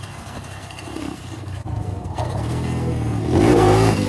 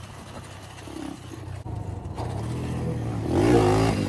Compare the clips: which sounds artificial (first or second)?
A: first